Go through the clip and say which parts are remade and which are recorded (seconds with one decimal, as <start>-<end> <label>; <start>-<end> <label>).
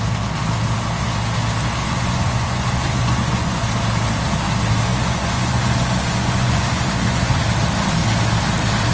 0.0-1.8 recorded; 1.8-3.7 remade; 3.7-4.9 recorded; 4.9-7.4 remade; 7.4-8.9 recorded